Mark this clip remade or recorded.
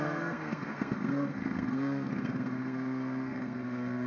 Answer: remade